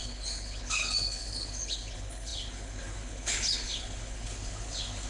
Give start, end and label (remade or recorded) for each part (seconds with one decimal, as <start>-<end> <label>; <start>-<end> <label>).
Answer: 0.0-5.1 remade